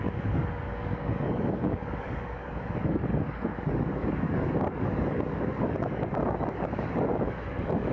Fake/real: fake